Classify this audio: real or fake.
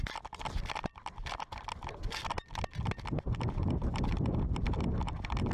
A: real